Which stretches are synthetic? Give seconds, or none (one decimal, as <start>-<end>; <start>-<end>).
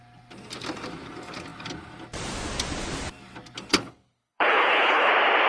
3.7-5.1